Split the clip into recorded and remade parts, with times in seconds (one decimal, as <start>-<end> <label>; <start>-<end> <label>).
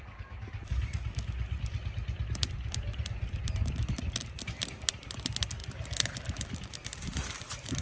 0.0-7.8 recorded